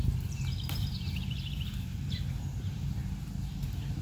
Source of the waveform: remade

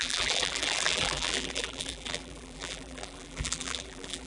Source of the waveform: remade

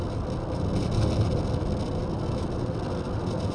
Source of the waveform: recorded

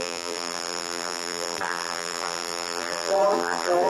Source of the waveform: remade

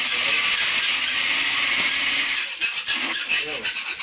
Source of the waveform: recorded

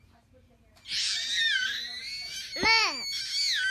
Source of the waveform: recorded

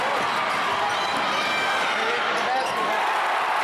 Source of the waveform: recorded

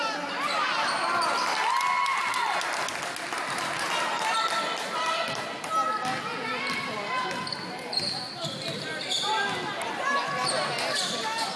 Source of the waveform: recorded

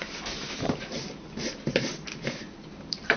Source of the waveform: remade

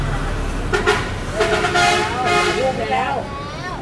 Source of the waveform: recorded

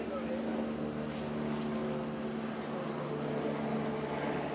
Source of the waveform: recorded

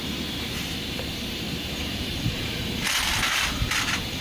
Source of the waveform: remade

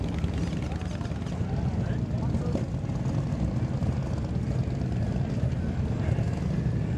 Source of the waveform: recorded